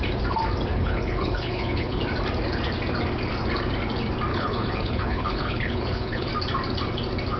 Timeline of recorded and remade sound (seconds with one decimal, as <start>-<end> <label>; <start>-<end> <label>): 0.0-0.7 recorded; 0.7-2.0 remade; 2.0-4.3 recorded; 4.3-6.3 remade; 6.3-7.4 recorded